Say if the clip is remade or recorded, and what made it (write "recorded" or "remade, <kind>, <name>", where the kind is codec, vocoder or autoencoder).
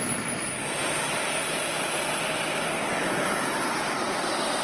recorded